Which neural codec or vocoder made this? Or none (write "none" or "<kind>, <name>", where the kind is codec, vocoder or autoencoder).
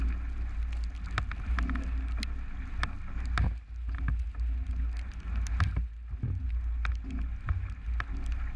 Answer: none